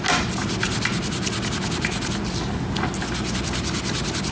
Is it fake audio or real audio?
real